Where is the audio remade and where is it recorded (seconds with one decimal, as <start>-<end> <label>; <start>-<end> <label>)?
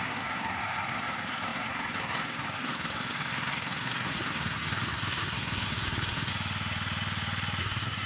0.0-6.3 remade; 6.3-7.6 recorded; 7.6-8.1 remade